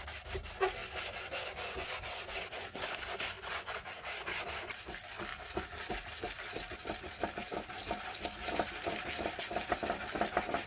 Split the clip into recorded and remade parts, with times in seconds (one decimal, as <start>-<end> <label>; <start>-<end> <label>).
0.0-0.8 recorded; 0.8-4.7 remade; 4.7-10.7 recorded